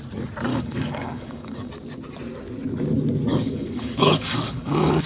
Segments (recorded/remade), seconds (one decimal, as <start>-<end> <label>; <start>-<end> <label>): 0.0-0.5 recorded; 0.5-1.7 remade; 1.7-3.3 recorded; 3.3-5.1 remade